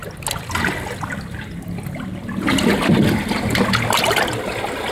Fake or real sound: real